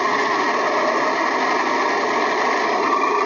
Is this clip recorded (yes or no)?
yes